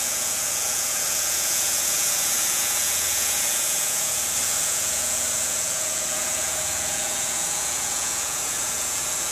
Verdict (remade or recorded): remade